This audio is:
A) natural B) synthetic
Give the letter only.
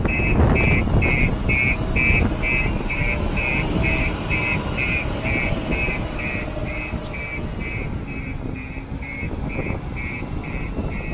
A